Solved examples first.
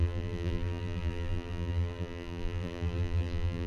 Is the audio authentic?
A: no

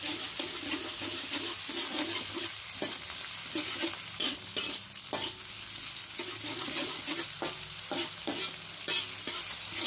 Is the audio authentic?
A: yes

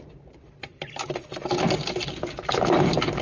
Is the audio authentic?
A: no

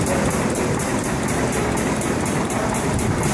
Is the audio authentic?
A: no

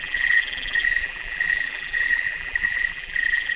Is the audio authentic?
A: no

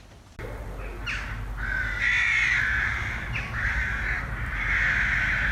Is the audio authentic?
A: yes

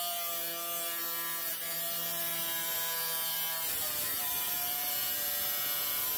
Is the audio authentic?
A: yes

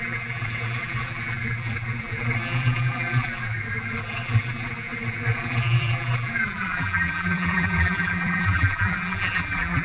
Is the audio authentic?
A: no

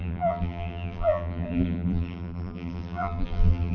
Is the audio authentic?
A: no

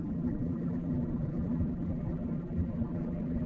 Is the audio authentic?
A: no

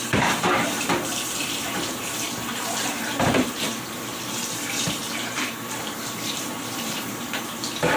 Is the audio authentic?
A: no